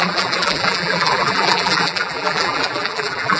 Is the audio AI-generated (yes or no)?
yes